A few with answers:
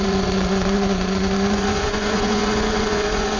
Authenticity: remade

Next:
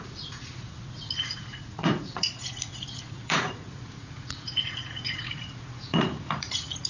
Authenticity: remade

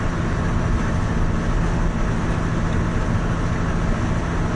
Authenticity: recorded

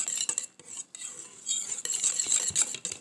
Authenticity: recorded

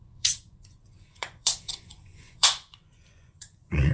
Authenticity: remade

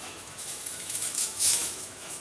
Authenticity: remade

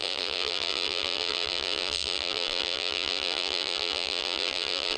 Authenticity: remade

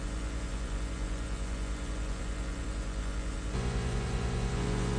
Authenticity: remade